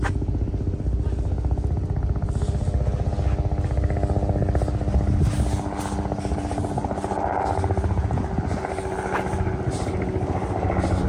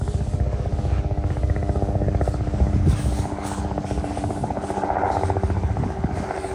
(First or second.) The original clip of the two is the first